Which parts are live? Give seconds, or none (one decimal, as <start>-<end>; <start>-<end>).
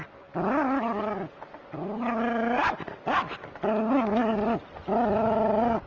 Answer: 0.0-5.9